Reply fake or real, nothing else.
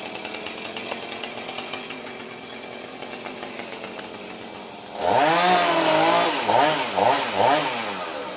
real